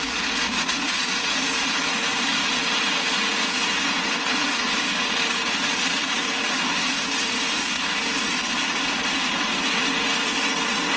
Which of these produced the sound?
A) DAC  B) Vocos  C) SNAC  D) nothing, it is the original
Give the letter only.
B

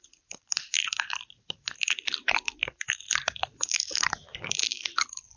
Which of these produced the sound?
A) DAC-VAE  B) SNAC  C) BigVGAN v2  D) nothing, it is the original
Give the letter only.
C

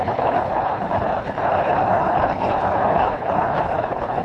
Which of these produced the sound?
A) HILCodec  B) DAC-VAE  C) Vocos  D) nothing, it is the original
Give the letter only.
A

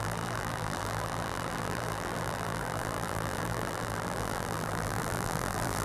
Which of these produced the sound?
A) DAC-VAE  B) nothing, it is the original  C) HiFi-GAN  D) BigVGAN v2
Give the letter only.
D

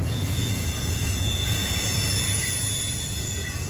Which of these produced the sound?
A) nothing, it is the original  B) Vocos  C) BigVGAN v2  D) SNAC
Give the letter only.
B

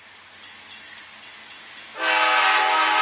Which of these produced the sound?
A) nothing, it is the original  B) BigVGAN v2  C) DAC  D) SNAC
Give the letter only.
A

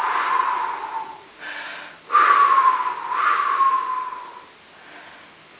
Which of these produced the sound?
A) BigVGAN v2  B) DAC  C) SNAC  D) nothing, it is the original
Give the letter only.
D